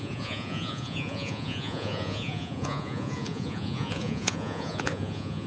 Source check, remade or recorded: remade